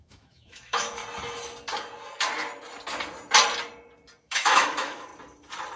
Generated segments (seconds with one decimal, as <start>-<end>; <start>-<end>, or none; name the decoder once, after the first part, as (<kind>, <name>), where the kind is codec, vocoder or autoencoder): 0.0-1.0 (autoencoder, DAC-VAE); 4.2-5.1